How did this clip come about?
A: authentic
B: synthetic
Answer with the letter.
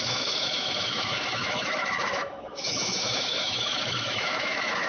B